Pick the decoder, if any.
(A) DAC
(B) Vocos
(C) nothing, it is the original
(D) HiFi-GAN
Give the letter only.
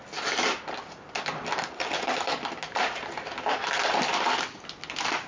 C